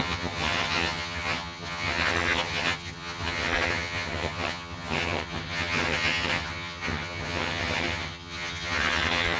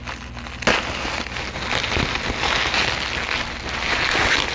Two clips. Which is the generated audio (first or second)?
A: first